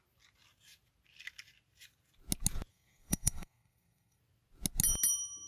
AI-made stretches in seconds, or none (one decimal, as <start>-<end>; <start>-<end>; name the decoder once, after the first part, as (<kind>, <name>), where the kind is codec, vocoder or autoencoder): 2.7-4.2 (codec, SNAC)